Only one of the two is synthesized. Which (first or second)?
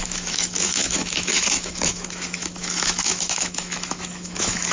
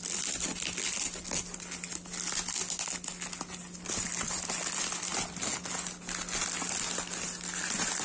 first